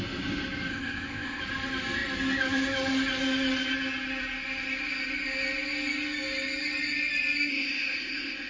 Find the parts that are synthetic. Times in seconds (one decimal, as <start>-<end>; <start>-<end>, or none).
0.7-1.4; 7.5-8.5